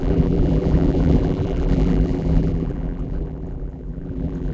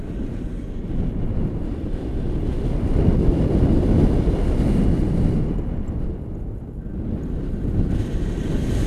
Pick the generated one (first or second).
first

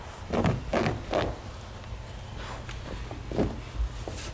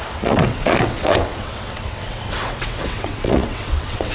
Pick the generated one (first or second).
second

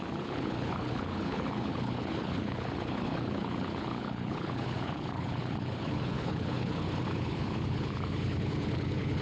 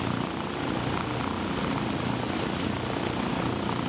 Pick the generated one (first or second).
first